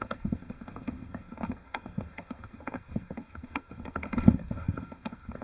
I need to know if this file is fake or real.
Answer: fake